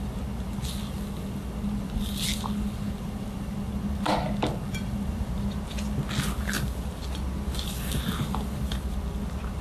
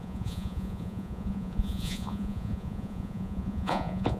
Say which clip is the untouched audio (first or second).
first